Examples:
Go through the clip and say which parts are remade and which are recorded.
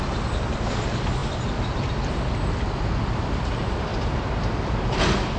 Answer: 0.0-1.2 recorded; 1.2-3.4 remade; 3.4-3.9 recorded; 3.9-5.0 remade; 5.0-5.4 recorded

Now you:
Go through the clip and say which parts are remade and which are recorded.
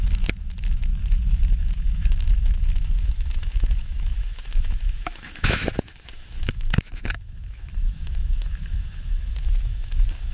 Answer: 0.0-0.9 remade; 0.9-1.5 recorded; 1.5-10.3 remade